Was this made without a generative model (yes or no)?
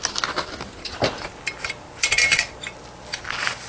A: yes